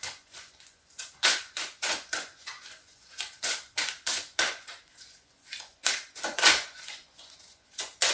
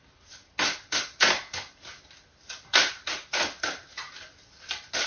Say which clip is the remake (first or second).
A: first